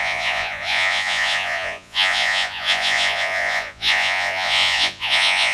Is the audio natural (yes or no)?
no